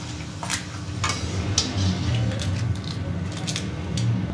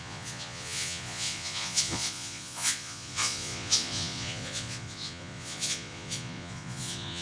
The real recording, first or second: first